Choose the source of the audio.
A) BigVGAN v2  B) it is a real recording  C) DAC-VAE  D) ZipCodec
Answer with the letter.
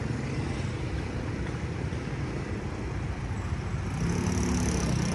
B